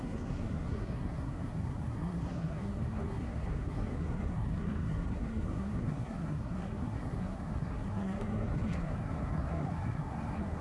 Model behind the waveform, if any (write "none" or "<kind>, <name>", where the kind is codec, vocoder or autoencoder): codec, SNAC